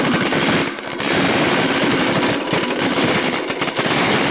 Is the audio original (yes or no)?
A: yes